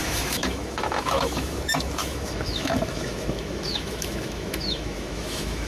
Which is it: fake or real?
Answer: fake